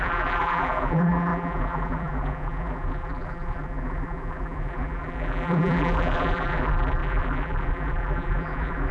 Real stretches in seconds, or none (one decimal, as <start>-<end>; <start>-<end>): none